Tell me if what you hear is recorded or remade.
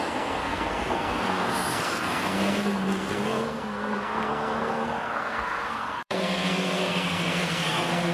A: remade